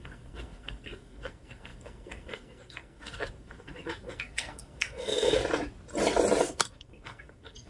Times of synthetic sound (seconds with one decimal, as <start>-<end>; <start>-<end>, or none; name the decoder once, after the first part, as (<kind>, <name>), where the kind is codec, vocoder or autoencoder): 0.0-5.4 (codec, SNAC); 6.4-7.7